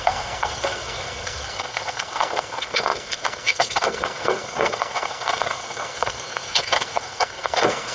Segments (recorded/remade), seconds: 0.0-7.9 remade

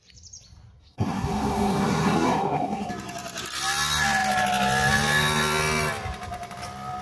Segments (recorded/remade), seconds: 0.0-0.8 recorded; 0.8-2.9 remade; 2.9-7.0 recorded

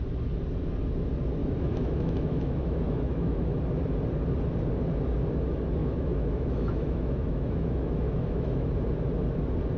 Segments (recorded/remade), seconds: 0.0-1.4 recorded; 1.4-3.6 remade; 3.6-5.8 recorded; 5.8-8.7 remade; 8.7-9.8 recorded

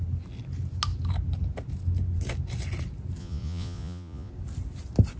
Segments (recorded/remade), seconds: 0.0-3.2 recorded; 3.2-4.3 remade; 4.3-5.2 recorded